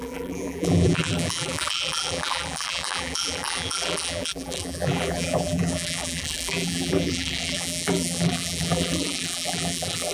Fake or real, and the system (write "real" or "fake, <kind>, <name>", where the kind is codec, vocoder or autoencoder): fake, vocoder, BigVGAN v2